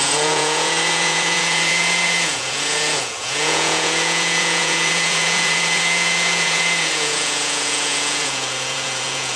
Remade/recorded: remade